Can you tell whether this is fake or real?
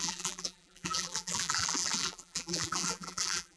fake